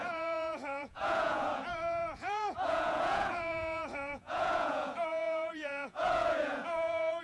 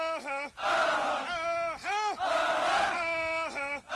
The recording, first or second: second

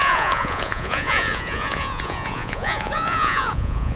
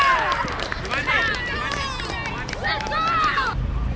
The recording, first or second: second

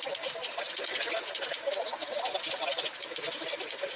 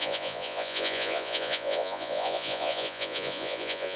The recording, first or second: first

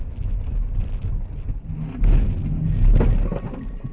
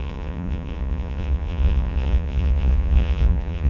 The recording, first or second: first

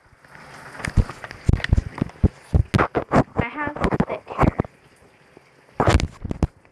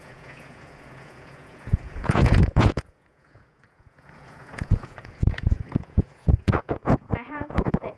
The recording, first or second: first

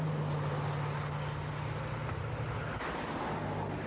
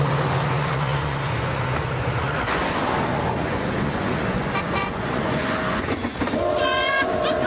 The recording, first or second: first